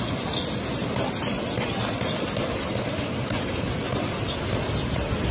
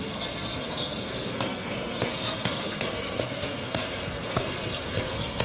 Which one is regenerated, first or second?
second